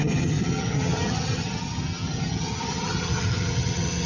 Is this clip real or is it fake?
fake